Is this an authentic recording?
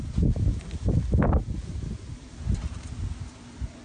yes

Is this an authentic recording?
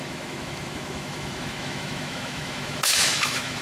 no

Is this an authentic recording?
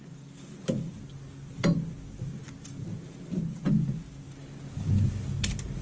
yes